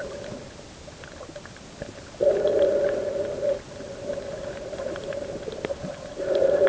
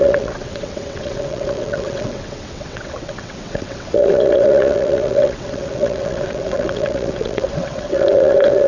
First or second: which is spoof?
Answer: second